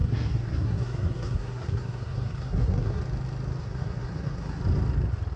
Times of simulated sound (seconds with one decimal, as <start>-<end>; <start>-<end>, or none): 0.0-3.0; 3.6-4.6